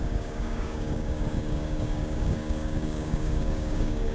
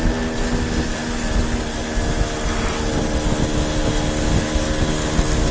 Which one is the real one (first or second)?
second